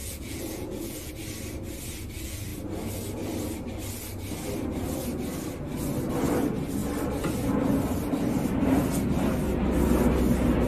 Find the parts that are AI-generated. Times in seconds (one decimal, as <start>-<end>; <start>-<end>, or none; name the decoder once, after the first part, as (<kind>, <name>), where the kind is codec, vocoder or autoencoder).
0.0-1.1 (vocoder, Vocos)